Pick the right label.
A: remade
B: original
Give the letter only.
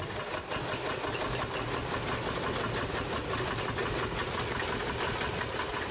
B